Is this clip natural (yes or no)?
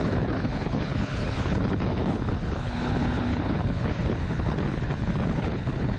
no